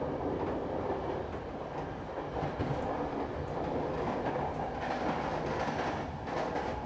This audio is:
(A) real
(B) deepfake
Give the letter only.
A